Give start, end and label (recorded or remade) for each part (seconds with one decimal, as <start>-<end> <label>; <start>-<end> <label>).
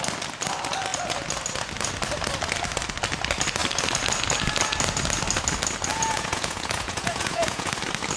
0.0-5.9 recorded; 5.9-7.7 remade; 7.7-8.2 recorded